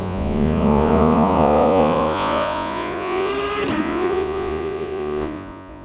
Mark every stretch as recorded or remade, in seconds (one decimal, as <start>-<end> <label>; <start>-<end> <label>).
0.0-3.3 remade; 3.3-3.8 recorded; 3.8-5.8 remade